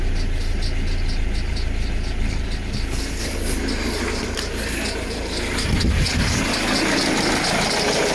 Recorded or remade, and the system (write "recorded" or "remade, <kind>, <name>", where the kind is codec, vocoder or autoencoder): recorded